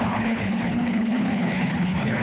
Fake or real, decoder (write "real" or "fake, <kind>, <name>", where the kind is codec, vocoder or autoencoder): fake, codec, HILCodec